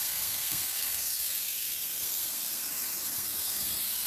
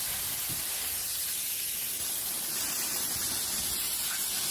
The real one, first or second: second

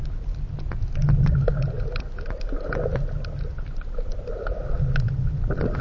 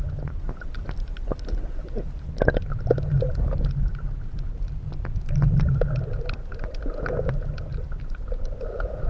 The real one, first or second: first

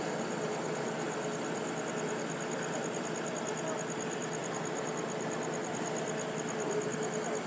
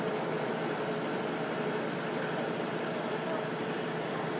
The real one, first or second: first